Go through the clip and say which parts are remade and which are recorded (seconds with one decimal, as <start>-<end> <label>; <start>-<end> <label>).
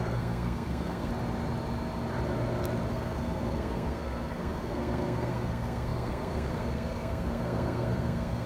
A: 0.0-1.1 remade; 1.1-2.9 recorded; 2.9-8.5 remade